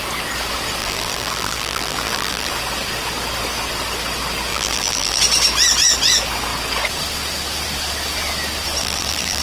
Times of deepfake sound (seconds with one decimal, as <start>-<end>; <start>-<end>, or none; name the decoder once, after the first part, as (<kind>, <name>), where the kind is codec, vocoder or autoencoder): 0.8-2.5 (vocoder, BigVGAN v2); 4.5-5.2; 8.8-9.4